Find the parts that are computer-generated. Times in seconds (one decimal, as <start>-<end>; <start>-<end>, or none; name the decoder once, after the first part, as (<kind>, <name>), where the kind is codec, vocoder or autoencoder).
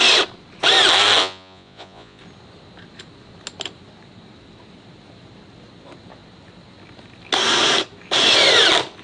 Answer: 1.2-2.2 (vocoder, Vocos)